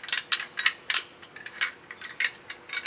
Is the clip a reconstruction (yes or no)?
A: no